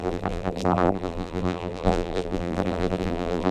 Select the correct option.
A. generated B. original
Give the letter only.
A